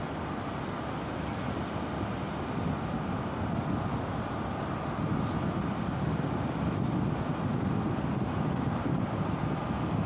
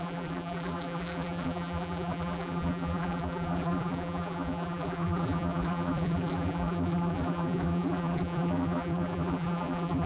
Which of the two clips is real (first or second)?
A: first